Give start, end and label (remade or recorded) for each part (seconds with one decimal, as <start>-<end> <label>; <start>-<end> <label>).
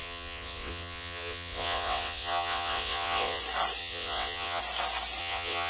0.0-3.4 remade; 3.4-3.8 recorded; 3.8-4.6 remade; 4.6-5.2 recorded; 5.2-5.7 remade